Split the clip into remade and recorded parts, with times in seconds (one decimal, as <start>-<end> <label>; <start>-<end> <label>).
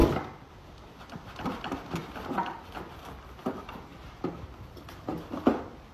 0.0-3.4 recorded; 3.4-4.0 remade; 4.0-5.9 recorded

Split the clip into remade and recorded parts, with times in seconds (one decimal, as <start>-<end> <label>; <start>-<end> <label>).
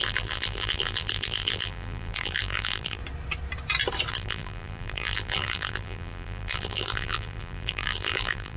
0.0-3.0 remade; 3.0-4.1 recorded; 4.1-8.6 remade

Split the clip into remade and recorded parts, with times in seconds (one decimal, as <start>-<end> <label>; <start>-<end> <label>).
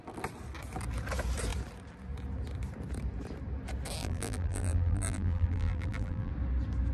0.0-4.0 recorded; 4.0-6.3 remade; 6.3-6.9 recorded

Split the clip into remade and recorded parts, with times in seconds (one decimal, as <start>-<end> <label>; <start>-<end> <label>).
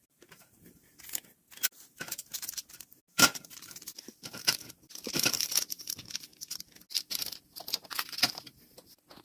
0.0-1.2 remade; 1.2-3.1 recorded; 3.1-5.5 remade; 5.5-9.2 recorded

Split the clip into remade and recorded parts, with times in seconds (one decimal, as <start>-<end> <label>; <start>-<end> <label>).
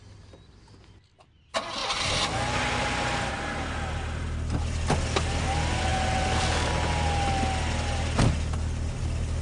0.0-9.4 recorded